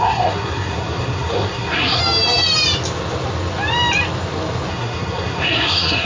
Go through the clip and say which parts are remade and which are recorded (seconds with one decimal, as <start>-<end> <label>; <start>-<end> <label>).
0.0-2.0 remade; 2.0-4.7 recorded; 4.7-6.1 remade